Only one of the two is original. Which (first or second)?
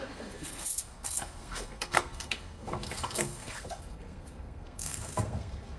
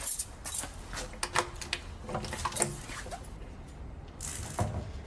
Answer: second